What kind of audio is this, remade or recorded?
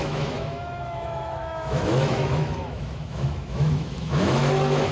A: remade